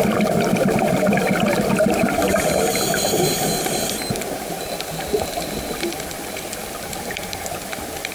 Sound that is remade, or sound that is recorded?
recorded